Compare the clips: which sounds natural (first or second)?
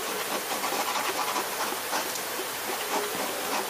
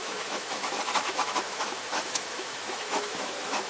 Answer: first